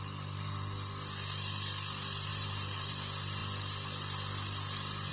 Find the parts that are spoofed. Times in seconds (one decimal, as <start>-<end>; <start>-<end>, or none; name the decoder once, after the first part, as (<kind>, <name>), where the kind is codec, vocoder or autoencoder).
2.3-2.9 (vocoder, BigVGAN v2)